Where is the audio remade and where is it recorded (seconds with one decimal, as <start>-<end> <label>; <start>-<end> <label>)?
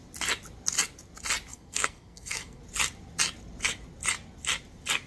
0.0-1.5 recorded; 1.5-2.6 remade; 2.6-5.1 recorded